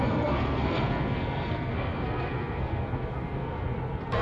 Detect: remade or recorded remade